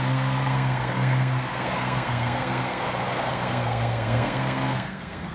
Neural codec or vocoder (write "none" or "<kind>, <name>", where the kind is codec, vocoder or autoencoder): codec, SNAC